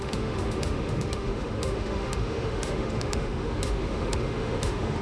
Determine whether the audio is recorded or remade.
remade